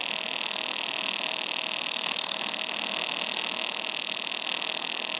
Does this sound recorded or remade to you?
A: recorded